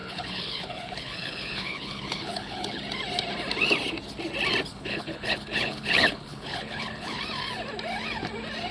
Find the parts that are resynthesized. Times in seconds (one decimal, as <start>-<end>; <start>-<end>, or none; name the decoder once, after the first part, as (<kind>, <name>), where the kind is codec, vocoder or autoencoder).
0.0-2.8 (codec, HILCodec); 4.7-7.2